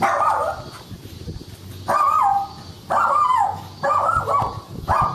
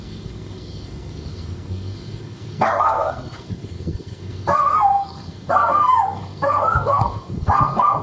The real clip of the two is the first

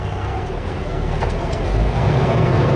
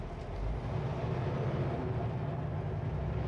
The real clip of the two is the second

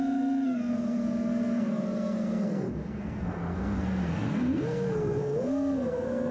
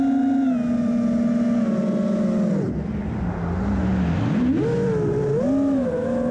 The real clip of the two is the second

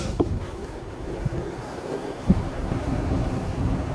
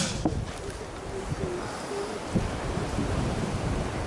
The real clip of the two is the second